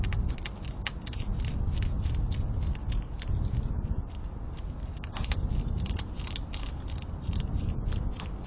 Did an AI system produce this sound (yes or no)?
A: no